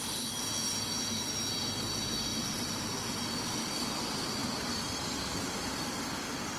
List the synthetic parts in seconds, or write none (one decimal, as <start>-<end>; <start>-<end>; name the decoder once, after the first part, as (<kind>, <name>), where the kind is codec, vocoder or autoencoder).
2.3-3.2 (vocoder, BigVGAN v2); 4.4-5.8